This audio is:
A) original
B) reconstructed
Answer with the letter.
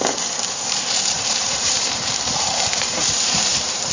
B